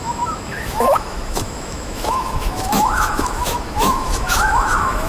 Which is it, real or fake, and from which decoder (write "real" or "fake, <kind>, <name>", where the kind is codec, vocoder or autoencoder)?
fake, autoencoder, DAC-VAE